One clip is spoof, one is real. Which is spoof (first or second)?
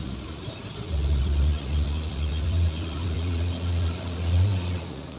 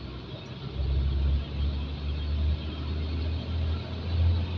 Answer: first